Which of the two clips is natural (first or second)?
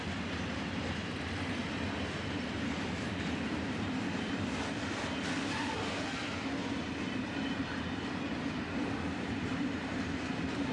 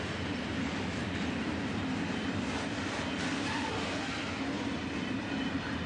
second